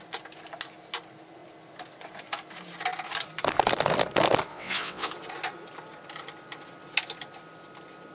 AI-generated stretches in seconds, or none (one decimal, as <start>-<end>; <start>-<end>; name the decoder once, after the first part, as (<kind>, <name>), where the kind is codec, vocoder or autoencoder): 4.5-5.1 (vocoder, WaveNeXt)